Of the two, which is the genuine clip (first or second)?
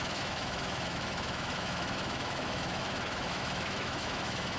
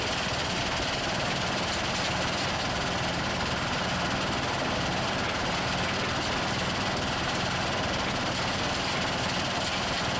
second